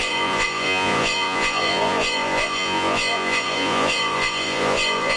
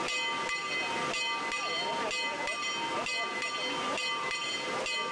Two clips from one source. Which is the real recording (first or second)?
second